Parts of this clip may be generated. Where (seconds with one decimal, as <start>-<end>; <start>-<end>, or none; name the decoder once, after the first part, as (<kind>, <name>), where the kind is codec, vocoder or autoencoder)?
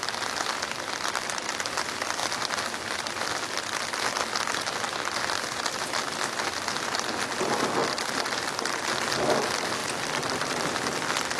9.8-10.5 (vocoder, BigVGAN v2)